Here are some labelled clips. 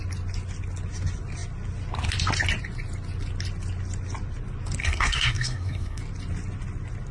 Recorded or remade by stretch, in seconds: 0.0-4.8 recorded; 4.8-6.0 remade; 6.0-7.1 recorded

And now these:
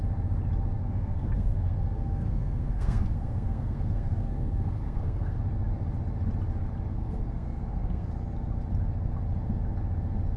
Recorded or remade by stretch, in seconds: 0.0-0.8 recorded; 0.8-5.4 remade; 5.4-6.9 recorded; 6.9-8.1 remade; 8.1-10.4 recorded